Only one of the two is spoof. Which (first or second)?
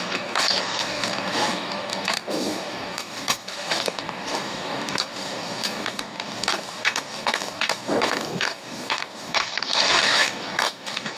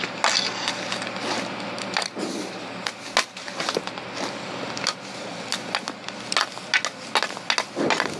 first